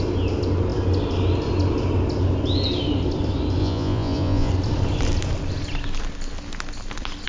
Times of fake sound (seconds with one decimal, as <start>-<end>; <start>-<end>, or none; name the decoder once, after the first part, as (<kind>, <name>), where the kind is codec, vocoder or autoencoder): 3.6-4.5 (vocoder, Vocos)